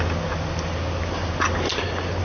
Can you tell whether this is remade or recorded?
recorded